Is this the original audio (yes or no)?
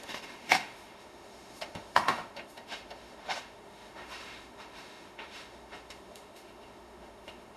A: no